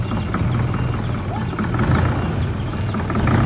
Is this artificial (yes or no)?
no